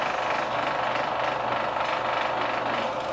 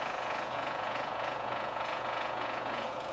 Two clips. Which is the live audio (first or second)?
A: first